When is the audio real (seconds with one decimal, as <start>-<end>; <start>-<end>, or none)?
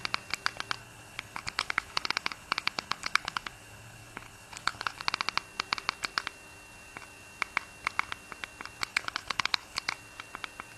0.0-0.8; 5.0-8.9; 9.8-10.8